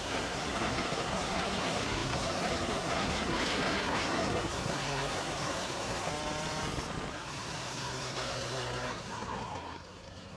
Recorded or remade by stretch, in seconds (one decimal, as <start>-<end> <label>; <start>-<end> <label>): 0.0-6.1 remade; 6.1-7.1 recorded; 7.1-10.4 remade